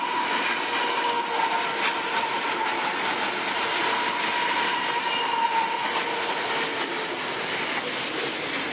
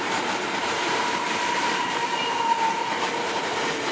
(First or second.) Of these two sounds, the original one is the first